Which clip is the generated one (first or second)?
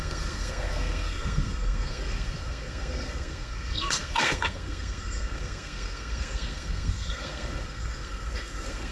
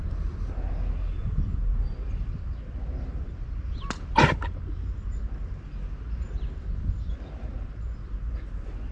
first